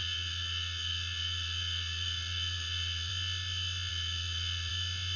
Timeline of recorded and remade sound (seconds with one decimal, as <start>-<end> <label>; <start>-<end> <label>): 0.0-3.1 remade; 3.1-3.9 recorded; 3.9-4.7 remade; 4.7-5.2 recorded